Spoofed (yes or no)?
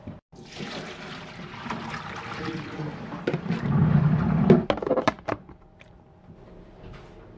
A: no